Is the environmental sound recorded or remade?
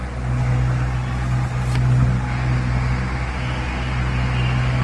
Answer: recorded